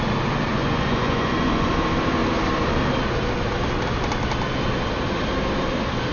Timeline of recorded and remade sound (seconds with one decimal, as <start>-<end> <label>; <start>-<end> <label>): 0.0-0.5 recorded; 0.5-1.7 remade; 1.7-6.1 recorded